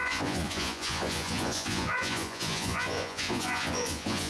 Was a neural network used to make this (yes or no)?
yes